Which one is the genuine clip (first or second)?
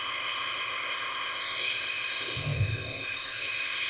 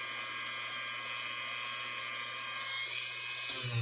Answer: second